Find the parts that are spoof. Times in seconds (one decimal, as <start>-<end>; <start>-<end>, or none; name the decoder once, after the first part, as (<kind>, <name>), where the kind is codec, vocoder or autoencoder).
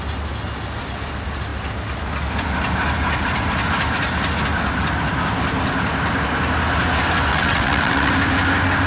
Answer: 7.3-8.1 (vocoder, WaveNeXt)